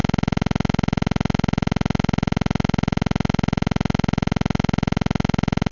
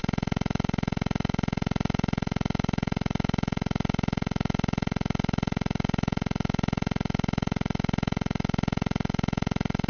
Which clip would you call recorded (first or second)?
first